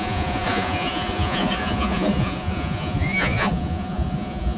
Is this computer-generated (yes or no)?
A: yes